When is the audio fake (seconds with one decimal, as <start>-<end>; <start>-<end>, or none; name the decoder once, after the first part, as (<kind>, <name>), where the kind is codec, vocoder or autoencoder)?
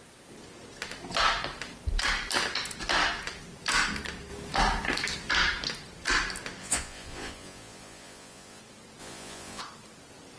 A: 6.6-8.6 (vocoder, Vocos); 9.0-9.6